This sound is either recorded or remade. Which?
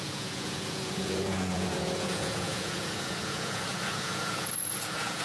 remade